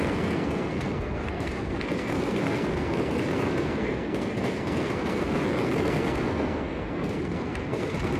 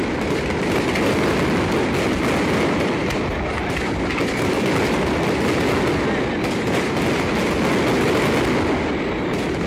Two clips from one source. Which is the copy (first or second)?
first